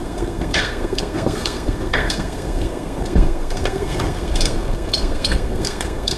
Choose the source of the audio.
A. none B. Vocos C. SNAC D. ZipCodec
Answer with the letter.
C